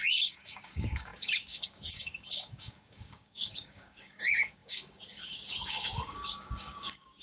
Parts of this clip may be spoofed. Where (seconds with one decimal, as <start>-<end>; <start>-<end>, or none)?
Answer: 0.0-7.2